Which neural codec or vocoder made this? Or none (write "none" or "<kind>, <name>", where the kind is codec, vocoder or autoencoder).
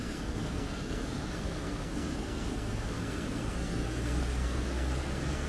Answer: codec, SNAC